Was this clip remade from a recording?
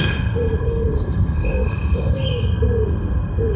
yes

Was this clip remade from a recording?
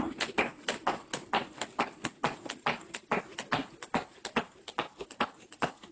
no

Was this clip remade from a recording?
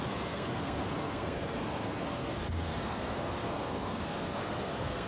yes